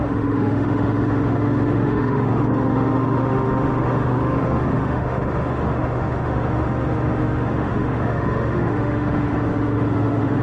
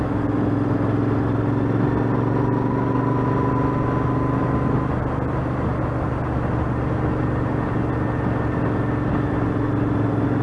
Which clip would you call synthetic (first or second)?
first